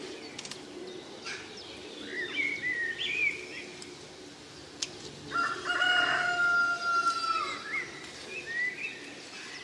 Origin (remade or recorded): recorded